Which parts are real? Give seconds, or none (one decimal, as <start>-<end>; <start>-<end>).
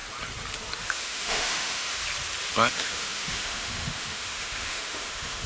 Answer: 0.0-0.8; 2.0-2.7